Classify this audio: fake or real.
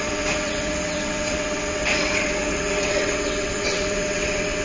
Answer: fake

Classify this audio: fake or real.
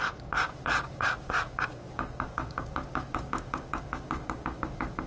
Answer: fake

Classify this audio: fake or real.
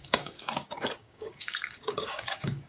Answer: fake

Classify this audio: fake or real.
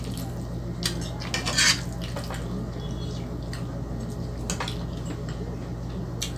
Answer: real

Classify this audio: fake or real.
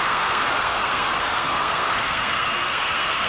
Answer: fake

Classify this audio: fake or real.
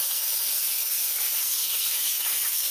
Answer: fake